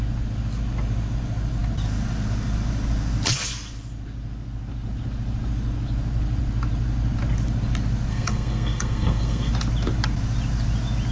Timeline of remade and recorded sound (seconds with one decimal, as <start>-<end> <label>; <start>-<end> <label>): 0.0-8.1 recorded; 8.1-9.5 remade; 9.5-11.1 recorded